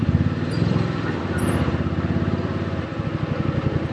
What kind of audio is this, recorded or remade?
remade